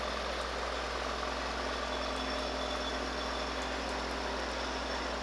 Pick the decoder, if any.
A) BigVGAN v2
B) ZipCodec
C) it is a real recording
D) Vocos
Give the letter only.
C